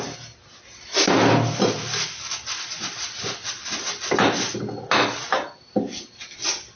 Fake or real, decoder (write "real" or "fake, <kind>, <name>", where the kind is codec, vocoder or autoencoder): real